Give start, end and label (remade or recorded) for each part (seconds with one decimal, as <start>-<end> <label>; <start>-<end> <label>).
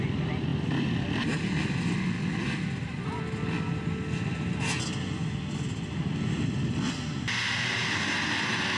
0.0-8.8 recorded